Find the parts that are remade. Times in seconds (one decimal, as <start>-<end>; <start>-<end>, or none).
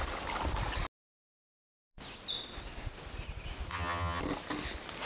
3.7-4.2